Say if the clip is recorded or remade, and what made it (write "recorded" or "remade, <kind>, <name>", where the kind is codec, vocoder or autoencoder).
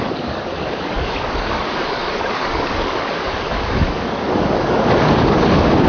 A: remade, codec, DAC